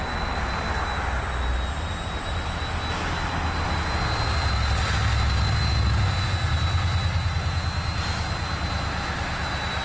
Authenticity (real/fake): real